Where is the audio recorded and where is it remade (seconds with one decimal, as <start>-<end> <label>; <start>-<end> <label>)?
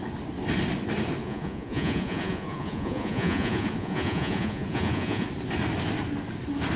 0.0-1.2 recorded; 1.2-5.3 remade; 5.3-6.8 recorded